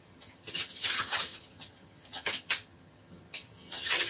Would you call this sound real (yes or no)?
no